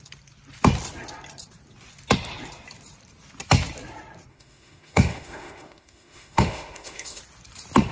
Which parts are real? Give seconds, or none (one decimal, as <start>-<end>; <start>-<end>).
0.0-4.3; 7.2-7.9